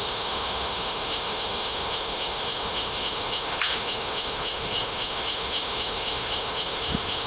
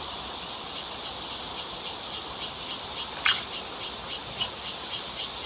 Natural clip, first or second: second